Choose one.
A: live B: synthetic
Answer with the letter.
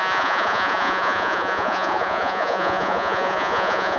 B